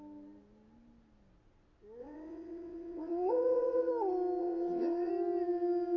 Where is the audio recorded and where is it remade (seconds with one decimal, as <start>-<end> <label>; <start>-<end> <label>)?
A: 0.0-2.0 recorded; 2.0-3.9 remade; 3.9-4.4 recorded; 4.4-5.1 remade; 5.1-6.0 recorded